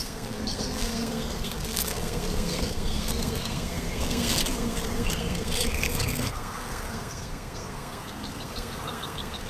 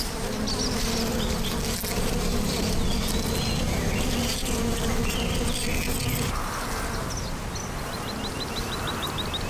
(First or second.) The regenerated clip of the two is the first